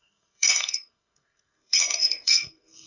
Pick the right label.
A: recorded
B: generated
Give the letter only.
B